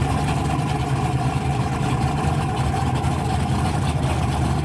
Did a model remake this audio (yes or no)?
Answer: no